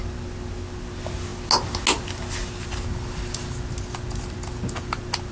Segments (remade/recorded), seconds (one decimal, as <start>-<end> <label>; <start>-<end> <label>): 0.0-5.3 recorded